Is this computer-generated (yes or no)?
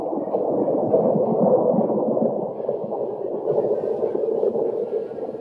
no